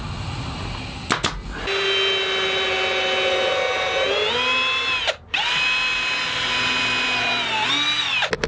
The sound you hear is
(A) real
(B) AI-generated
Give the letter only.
A